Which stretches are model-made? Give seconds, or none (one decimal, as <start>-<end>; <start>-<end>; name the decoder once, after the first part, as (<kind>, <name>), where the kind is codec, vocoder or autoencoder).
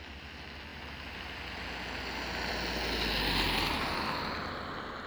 none